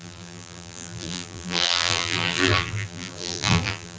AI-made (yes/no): yes